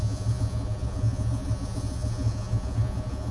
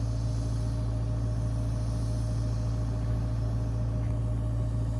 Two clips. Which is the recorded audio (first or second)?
second